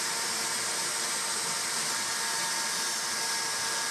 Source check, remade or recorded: recorded